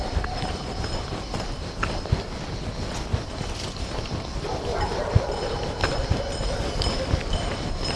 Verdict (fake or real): real